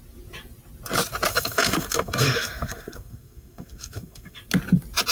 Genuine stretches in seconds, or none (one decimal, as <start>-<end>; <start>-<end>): 0.0-1.3; 4.4-5.1